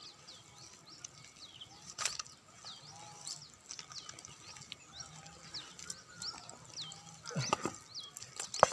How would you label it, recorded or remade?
recorded